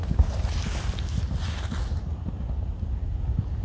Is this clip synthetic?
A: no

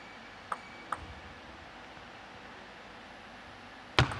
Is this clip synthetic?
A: no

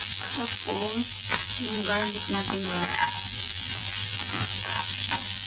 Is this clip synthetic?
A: yes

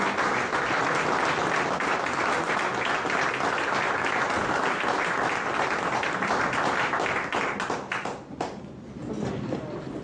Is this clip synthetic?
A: no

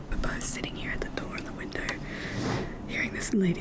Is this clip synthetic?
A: yes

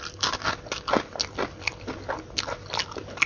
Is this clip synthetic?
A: no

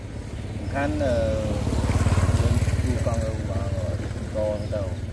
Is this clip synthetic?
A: no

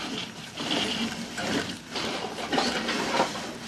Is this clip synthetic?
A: no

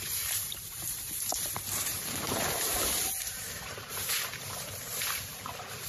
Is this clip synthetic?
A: yes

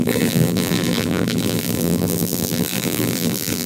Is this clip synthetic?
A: yes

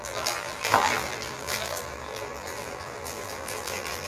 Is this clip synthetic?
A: yes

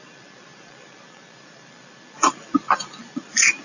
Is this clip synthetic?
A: yes